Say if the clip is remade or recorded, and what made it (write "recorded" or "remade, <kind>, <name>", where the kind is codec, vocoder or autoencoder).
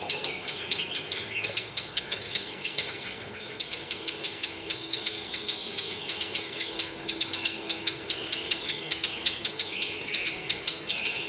remade, codec, SNAC